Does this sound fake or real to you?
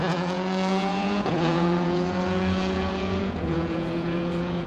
fake